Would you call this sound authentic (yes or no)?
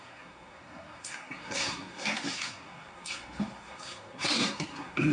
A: no